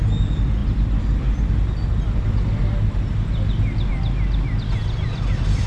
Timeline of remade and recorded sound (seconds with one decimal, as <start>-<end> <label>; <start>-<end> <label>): 0.0-5.7 recorded